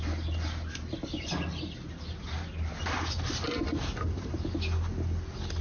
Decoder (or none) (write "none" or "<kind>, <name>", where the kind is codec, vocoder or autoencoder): none